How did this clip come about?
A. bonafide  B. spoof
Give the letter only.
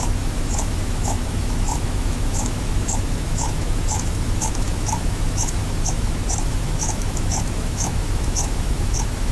B